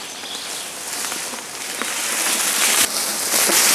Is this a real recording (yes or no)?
yes